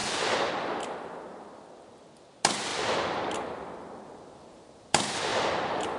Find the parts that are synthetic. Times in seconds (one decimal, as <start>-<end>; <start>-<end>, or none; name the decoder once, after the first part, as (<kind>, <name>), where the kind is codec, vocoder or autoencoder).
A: none